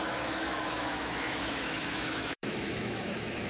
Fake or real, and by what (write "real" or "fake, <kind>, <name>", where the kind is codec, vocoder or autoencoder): fake, autoencoder, DAC-VAE